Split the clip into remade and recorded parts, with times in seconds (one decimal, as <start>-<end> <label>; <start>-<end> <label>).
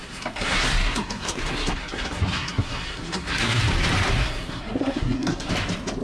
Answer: 0.0-3.6 remade; 3.6-4.2 recorded; 4.2-5.5 remade; 5.5-6.0 recorded